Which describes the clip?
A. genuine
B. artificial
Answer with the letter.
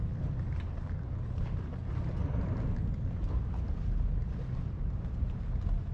A